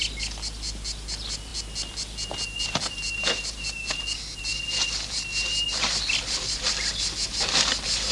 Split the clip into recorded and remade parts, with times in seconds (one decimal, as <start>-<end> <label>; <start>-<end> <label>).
0.0-8.1 recorded